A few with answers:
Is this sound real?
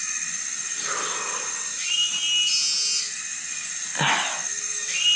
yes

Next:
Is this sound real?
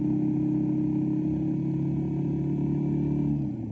yes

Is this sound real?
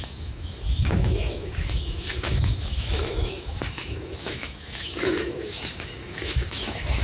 no